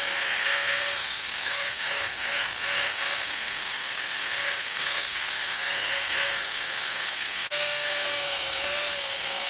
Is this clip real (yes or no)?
no